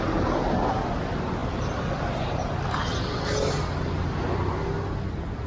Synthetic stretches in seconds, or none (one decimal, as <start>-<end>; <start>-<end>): none